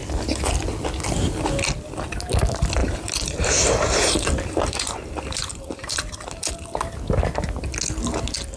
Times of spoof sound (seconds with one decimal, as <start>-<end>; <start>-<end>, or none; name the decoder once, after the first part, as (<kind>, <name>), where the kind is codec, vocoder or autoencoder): 2.8-6.5 (vocoder, BigVGAN v2)